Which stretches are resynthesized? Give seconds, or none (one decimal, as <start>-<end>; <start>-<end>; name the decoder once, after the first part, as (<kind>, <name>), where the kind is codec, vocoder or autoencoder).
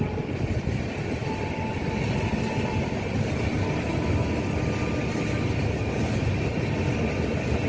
none